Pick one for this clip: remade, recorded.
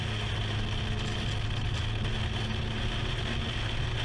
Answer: recorded